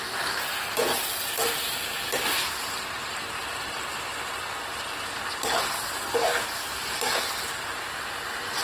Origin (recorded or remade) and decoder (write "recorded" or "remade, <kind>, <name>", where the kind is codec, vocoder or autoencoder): recorded